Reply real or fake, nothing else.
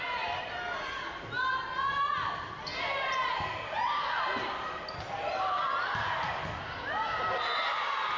real